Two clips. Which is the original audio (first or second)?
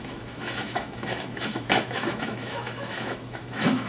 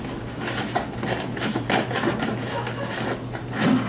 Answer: second